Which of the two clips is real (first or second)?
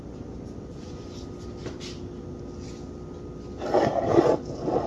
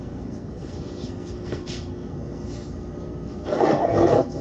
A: first